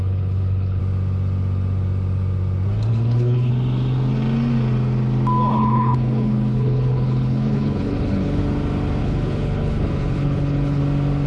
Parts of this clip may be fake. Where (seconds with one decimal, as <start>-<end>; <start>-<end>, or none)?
0.0-0.8; 2.9-3.5; 5.5-8.4; 9.0-10.8